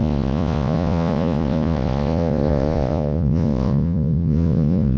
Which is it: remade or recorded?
remade